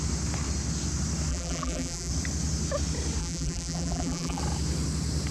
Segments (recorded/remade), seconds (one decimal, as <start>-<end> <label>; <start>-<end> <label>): 0.0-1.3 recorded; 1.3-2.1 remade; 2.1-3.2 recorded; 3.2-4.4 remade; 4.4-5.3 recorded